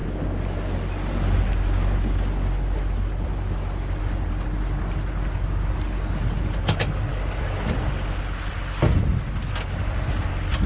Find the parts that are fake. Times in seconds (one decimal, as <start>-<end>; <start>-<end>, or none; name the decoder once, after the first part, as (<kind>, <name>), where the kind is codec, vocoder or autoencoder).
none